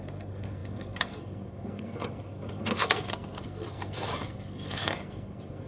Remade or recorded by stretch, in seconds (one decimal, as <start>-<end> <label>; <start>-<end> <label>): 0.0-5.7 remade